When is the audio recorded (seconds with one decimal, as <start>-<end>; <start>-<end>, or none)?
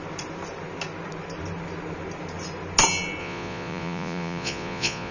0.0-3.2